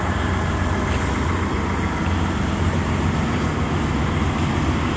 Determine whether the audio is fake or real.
real